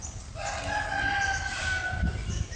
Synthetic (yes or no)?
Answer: no